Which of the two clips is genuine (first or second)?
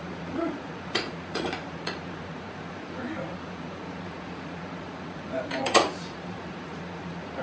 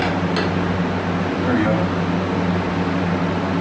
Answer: second